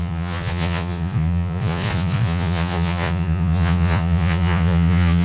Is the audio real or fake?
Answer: fake